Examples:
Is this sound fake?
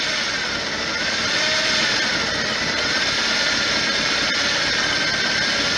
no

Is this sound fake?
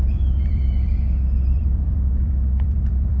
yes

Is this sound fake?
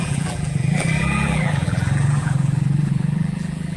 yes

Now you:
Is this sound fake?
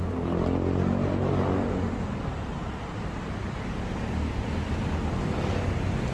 no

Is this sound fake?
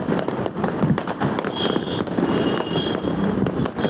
no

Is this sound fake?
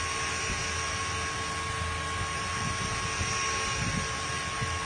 no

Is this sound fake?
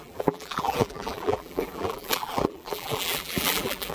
yes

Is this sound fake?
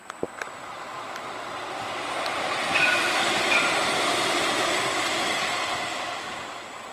no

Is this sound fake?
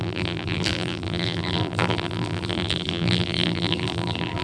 yes